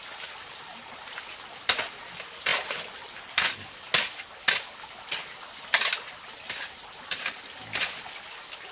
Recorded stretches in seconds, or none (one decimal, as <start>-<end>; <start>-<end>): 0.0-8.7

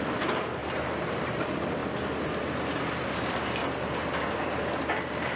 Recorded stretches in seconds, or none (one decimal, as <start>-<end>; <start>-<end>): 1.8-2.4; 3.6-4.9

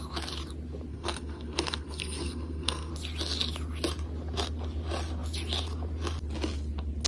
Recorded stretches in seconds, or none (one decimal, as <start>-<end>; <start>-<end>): 0.0-0.9; 2.9-7.1